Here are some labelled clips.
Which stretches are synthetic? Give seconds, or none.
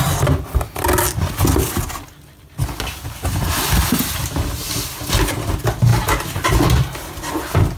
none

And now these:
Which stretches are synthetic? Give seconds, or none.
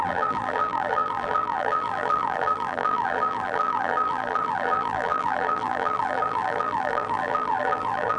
0.0-8.2 (vocoder, BigVGAN v2)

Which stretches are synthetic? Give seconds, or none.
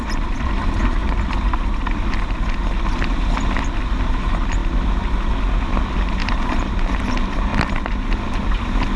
1.0-1.6 (vocoder, BigVGAN v2); 4.6-5.4; 6.2-6.7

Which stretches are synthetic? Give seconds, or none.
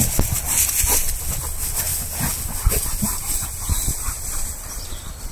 3.1-5.3 (vocoder, BigVGAN v2)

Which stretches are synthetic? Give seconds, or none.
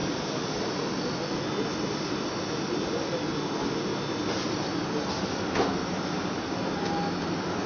none